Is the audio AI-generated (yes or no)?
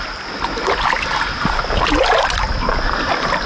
no